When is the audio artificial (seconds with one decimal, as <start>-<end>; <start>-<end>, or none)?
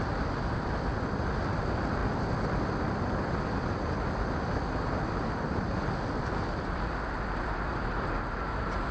none